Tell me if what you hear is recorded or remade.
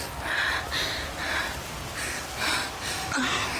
recorded